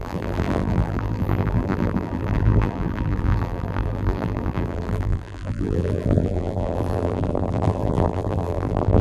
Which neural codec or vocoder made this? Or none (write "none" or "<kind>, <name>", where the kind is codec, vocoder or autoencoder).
vocoder, BigVGAN v2